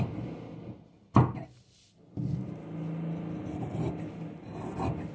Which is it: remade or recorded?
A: recorded